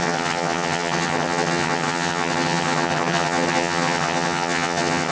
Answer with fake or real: fake